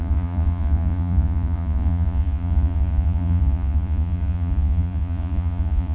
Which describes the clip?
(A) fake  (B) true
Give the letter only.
A